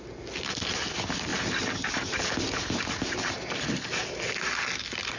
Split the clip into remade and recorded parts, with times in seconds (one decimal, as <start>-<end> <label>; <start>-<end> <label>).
0.0-5.2 recorded